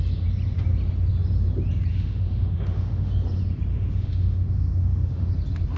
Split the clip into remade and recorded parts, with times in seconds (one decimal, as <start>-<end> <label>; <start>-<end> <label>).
0.0-1.9 recorded; 1.9-3.1 remade; 3.1-3.7 recorded; 3.7-5.3 remade; 5.3-5.8 recorded